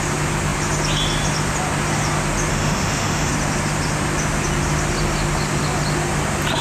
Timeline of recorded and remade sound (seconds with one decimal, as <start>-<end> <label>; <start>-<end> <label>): 0.0-2.5 recorded; 2.5-3.3 remade; 3.3-6.6 recorded